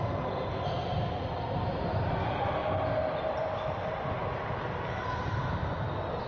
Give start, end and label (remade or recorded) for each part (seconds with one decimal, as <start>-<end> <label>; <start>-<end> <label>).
0.0-2.6 recorded; 2.6-5.4 remade; 5.4-6.3 recorded